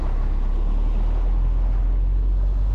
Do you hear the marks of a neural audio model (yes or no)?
no